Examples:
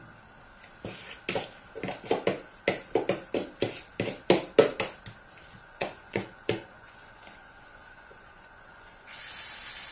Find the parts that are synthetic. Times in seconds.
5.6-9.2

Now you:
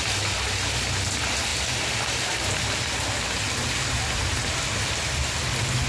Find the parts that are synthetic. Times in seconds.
none